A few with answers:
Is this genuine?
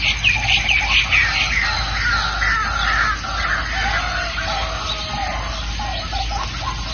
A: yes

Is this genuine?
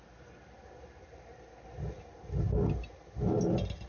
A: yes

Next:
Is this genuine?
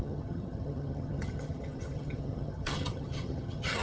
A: no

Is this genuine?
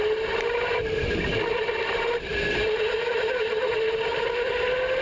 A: yes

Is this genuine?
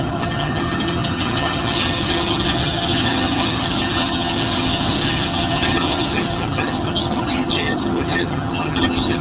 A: no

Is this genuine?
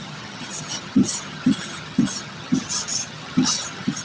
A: no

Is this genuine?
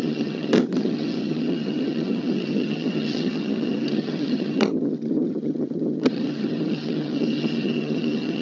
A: no